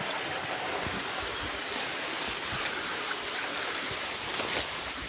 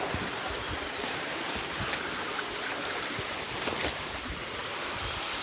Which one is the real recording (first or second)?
first